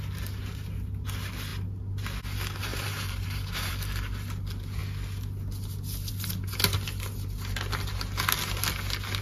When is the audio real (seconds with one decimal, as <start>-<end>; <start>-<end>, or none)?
0.0-2.7; 3.7-9.2